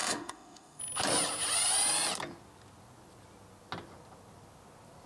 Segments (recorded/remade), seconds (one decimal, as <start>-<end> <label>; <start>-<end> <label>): 0.0-0.8 remade; 0.8-5.1 recorded